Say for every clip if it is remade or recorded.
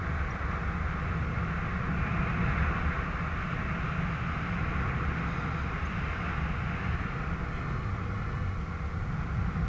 recorded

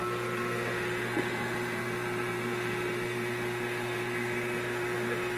remade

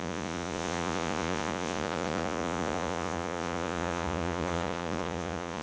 remade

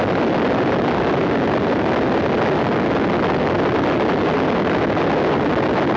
recorded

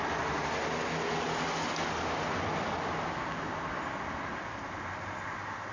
recorded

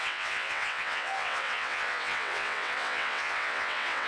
remade